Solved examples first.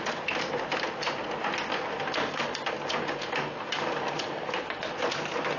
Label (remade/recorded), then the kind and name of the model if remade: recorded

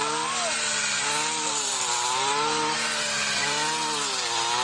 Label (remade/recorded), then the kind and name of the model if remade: recorded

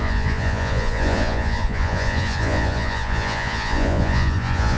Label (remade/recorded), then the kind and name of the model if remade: remade, vocoder, Vocos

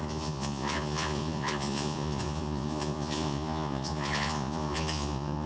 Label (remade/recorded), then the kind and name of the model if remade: remade, vocoder, Vocos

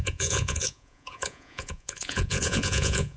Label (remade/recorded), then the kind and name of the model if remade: remade, vocoder, Vocos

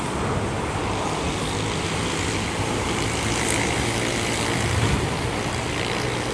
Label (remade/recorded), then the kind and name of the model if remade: recorded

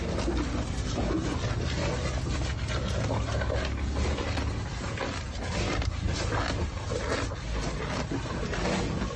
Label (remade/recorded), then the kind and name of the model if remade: recorded